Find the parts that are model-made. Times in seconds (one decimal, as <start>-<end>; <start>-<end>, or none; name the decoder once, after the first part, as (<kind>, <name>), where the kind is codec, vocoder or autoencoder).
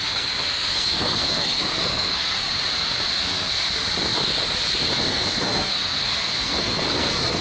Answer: 0.0-2.5 (codec, SNAC); 3.1-3.8; 5.1-7.4